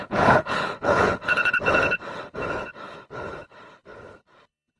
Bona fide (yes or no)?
no